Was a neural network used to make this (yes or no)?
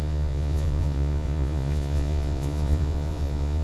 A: yes